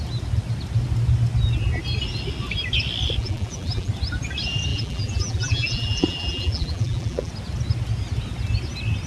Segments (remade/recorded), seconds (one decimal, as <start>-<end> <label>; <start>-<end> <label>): 0.0-3.2 recorded; 3.2-3.9 remade; 3.9-4.7 recorded; 4.7-7.3 remade; 7.3-9.1 recorded